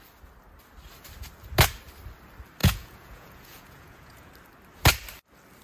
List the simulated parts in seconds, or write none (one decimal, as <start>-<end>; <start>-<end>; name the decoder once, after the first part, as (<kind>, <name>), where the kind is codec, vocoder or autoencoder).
2.6-4.3 (vocoder, Vocos)